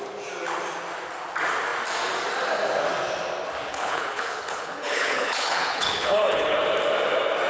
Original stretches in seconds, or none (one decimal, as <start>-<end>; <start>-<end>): 0.0-3.7; 6.6-7.5